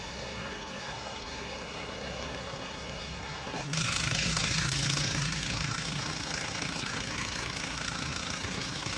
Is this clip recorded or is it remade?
remade